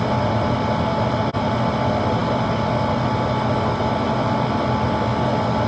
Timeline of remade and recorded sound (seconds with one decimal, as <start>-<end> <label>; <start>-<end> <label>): 0.0-5.7 recorded